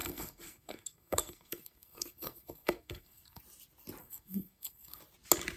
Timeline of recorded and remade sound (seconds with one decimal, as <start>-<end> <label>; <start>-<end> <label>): 0.0-3.4 remade; 3.4-4.0 recorded; 4.0-5.0 remade; 5.0-5.6 recorded